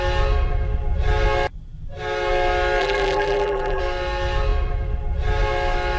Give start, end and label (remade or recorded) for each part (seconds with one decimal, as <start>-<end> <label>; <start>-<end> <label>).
0.0-2.8 recorded; 2.8-3.8 remade; 3.8-6.0 recorded